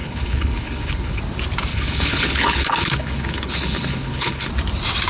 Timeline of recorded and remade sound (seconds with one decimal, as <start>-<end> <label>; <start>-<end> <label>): 0.0-1.2 remade; 1.2-1.7 recorded; 1.7-4.5 remade; 4.5-5.1 recorded